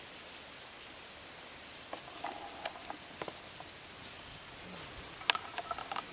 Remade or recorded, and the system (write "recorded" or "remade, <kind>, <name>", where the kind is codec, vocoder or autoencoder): recorded